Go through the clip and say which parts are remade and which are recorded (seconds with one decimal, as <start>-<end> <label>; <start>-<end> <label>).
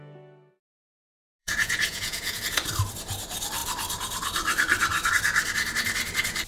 0.0-1.4 recorded; 1.4-2.4 remade; 2.4-6.5 recorded